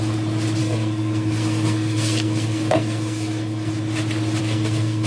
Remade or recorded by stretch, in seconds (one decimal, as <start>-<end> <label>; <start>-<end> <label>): 0.0-0.6 recorded; 0.6-3.7 remade; 3.7-4.4 recorded; 4.4-5.1 remade